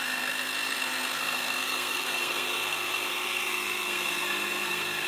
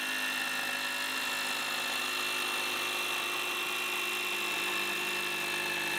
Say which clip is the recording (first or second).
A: second